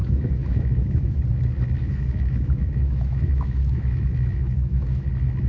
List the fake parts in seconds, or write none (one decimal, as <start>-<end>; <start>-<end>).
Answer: 0.0-1.2; 1.8-5.1